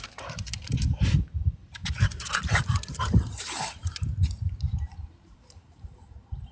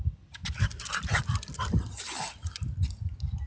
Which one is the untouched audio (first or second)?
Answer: second